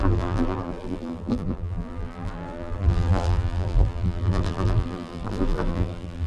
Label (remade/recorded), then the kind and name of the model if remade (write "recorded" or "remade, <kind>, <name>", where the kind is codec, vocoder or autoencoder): remade, vocoder, BigVGAN v2